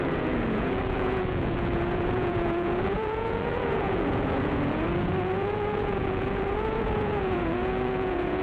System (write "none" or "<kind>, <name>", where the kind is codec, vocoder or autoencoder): vocoder, Vocos